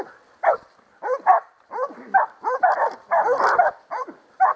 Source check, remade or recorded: recorded